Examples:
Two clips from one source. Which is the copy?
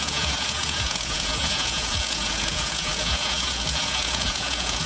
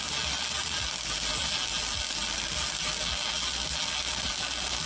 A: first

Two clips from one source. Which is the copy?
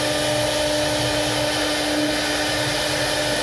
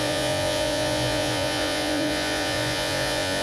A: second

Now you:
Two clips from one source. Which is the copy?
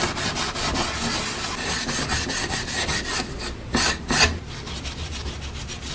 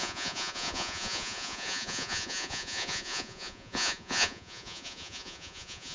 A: second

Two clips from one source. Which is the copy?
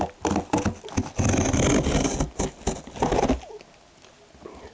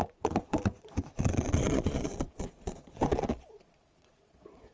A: second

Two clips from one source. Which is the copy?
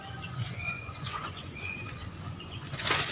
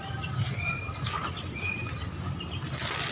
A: first